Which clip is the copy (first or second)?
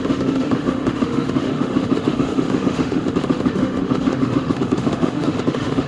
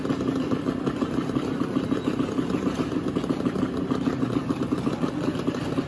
first